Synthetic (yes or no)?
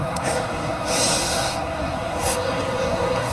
yes